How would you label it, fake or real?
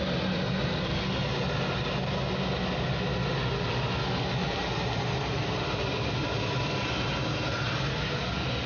real